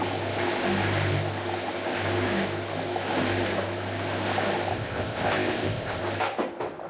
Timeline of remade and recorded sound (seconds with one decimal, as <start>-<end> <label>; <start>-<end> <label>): 0.0-4.7 recorded; 4.7-6.0 remade; 6.0-6.9 recorded